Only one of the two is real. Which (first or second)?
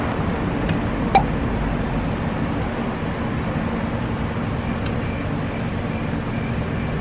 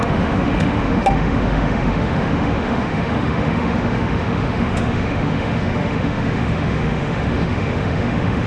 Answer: first